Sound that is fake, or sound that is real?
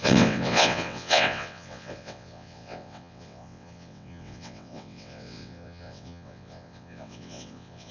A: fake